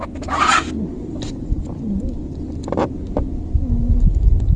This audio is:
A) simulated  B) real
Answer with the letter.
B